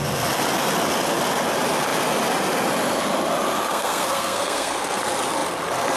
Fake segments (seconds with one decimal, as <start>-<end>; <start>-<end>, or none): 3.7-5.0